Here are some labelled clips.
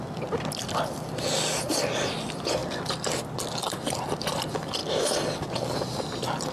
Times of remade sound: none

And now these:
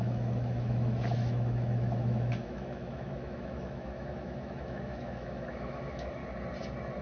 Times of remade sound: 0.0-6.2 (autoencoder, DAC-VAE)

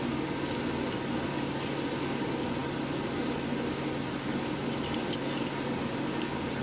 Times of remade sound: none

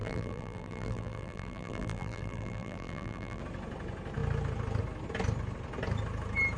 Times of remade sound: 0.0-3.4 (vocoder, BigVGAN v2)

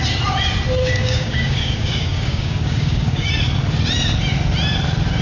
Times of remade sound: 0.8-3.3 (codec, DAC)

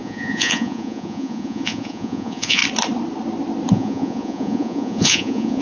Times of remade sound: 0.0-2.6 (vocoder, Vocos); 3.7-5.6